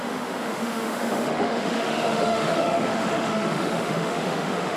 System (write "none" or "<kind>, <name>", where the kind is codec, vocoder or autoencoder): autoencoder, DAC-VAE